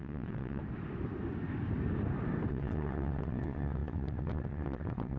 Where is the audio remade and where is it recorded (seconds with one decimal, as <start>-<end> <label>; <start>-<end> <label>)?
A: 0.0-0.6 remade; 0.6-2.5 recorded; 2.5-5.2 remade

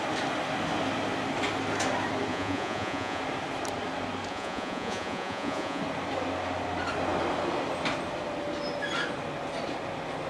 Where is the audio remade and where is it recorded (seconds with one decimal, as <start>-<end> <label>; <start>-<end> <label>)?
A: 0.0-2.3 recorded; 2.3-3.2 remade; 3.2-4.3 recorded; 4.3-5.8 remade; 5.8-10.3 recorded

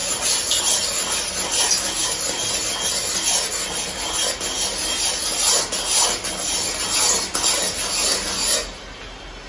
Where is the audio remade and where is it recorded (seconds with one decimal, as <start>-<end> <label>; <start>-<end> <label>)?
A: 0.0-9.5 recorded

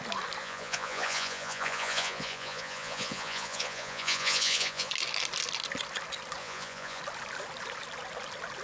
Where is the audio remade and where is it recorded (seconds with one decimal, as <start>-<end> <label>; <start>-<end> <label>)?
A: 0.0-0.4 recorded; 0.4-4.9 remade; 4.9-6.4 recorded; 6.4-7.0 remade; 7.0-8.6 recorded

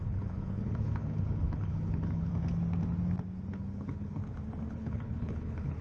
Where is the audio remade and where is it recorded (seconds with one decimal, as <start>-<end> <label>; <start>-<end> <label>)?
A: 0.0-2.3 remade; 2.3-3.5 recorded; 3.5-4.2 remade; 4.2-4.7 recorded; 4.7-5.8 remade